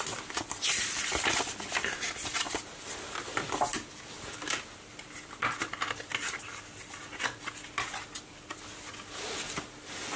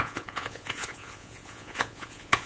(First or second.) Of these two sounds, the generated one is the second